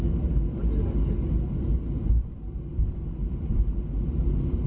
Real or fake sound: real